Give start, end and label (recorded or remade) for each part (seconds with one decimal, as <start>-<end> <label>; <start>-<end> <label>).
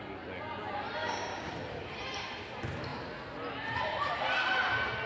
0.0-1.0 recorded; 1.0-1.5 remade; 1.5-5.1 recorded